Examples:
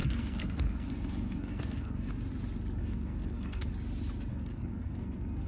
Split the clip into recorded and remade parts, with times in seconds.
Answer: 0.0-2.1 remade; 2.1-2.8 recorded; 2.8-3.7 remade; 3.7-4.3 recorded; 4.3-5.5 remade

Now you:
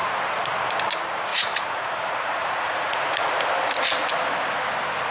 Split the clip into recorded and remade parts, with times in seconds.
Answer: 0.0-1.3 recorded; 1.3-3.3 remade; 3.3-5.1 recorded

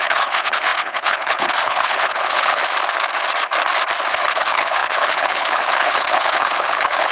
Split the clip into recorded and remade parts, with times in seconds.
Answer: 0.0-2.6 remade; 2.6-4.1 recorded; 4.1-7.1 remade

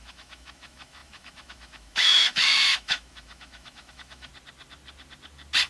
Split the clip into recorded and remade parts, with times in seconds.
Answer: 0.0-4.3 remade; 4.3-5.7 recorded

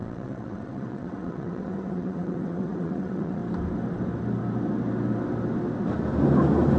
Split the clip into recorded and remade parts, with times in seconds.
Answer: 0.0-3.4 remade; 3.4-6.8 recorded

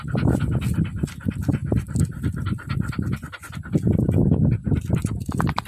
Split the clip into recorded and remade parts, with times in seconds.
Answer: 0.0-5.7 recorded

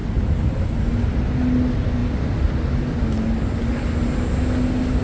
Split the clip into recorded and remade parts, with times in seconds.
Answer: 0.0-5.0 recorded